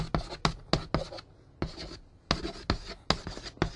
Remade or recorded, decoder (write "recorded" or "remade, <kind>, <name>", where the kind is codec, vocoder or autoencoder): recorded